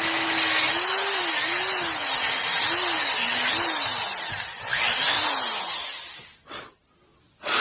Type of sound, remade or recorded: recorded